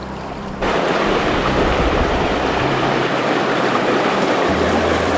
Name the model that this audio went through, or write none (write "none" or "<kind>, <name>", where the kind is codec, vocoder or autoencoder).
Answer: vocoder, BigVGAN v2